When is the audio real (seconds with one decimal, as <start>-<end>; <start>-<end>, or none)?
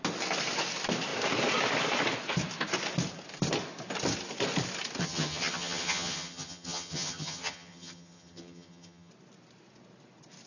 0.0-5.0; 9.1-10.5